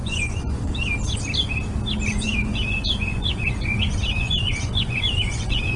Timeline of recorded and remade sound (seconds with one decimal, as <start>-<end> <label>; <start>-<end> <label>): 0.0-0.7 remade; 0.7-2.1 recorded; 2.1-5.8 remade